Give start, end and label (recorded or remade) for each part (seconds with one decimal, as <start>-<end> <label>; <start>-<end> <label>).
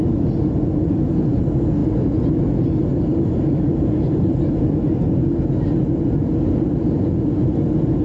0.0-2.9 recorded; 2.9-4.7 remade; 4.7-8.0 recorded